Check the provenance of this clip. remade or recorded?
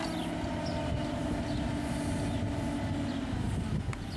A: recorded